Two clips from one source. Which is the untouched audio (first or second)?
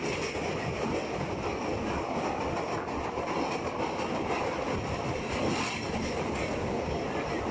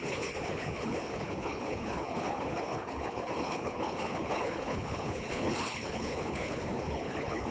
first